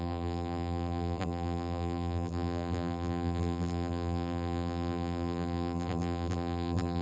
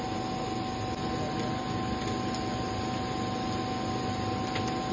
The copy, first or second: first